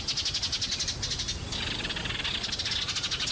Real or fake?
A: real